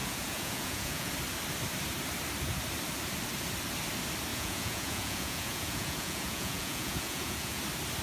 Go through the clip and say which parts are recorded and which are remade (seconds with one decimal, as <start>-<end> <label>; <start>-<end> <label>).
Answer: 0.0-1.1 remade; 1.1-4.3 recorded; 4.3-7.6 remade; 7.6-8.0 recorded